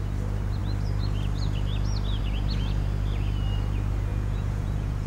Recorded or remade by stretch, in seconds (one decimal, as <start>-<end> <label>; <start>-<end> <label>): 0.0-4.1 recorded; 4.1-5.1 remade